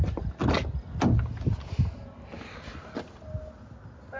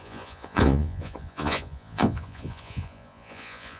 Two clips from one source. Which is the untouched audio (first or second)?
first